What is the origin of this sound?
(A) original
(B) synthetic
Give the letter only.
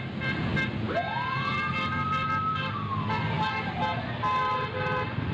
A